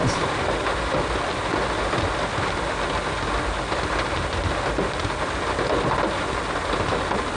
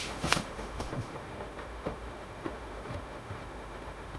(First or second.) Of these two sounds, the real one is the first